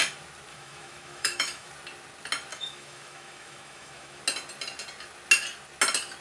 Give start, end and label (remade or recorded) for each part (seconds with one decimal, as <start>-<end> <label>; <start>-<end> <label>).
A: 0.0-0.5 recorded; 0.5-1.7 remade; 1.7-2.5 recorded; 2.5-4.2 remade; 4.2-6.2 recorded